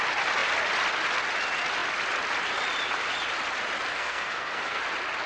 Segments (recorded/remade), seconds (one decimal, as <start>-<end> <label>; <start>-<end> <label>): 0.0-3.9 recorded; 3.9-4.8 remade; 4.8-5.3 recorded